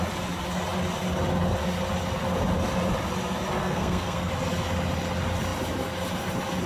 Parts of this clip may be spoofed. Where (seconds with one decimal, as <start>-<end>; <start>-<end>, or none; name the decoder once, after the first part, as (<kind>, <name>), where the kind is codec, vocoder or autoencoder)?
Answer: 3.6-4.3 (codec, SNAC)